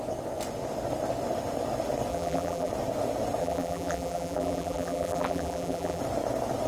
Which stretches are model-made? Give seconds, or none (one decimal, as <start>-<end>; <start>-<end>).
2.1-2.7; 3.4-6.0